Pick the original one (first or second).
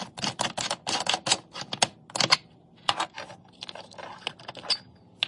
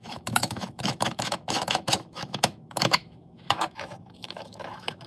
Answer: first